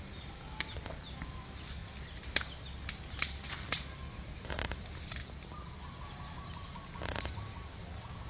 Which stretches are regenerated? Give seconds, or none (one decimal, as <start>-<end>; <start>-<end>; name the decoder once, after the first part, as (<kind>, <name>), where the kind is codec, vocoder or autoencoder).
none